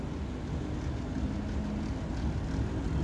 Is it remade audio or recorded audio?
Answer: recorded